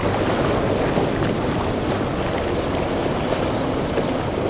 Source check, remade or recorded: recorded